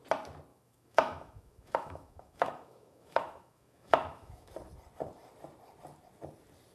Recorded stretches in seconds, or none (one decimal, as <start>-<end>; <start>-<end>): 0.0-0.5; 4.5-6.7